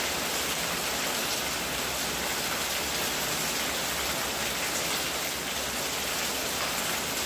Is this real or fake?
real